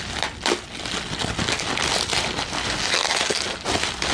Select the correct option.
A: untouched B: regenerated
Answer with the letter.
A